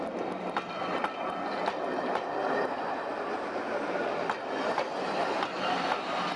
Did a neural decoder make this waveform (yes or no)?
no